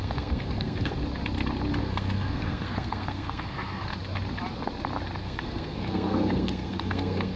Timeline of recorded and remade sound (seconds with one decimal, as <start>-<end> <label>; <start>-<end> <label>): 0.0-1.0 remade; 1.0-1.8 recorded; 1.8-3.9 remade; 3.9-5.2 recorded; 5.2-7.4 remade